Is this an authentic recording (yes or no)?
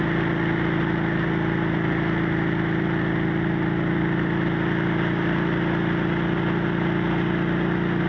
yes